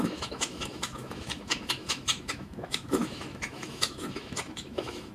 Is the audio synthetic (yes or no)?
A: yes